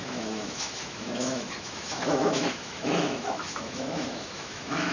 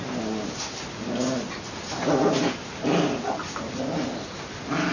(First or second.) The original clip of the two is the second